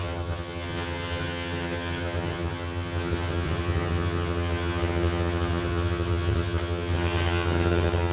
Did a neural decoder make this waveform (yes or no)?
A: yes